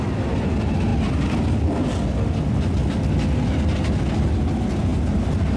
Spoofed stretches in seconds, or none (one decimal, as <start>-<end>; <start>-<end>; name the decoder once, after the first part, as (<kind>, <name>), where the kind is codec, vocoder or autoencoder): none